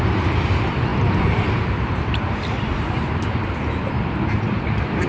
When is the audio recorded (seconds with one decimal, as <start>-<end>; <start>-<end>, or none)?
0.9-1.4